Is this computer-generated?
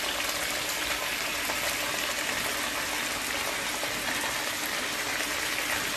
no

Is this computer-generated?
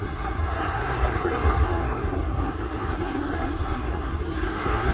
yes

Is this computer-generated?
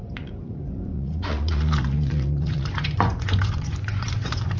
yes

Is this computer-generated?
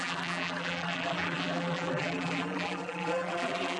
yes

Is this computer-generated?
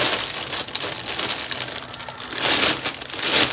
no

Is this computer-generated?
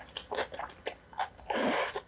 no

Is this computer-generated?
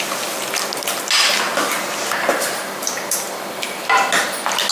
no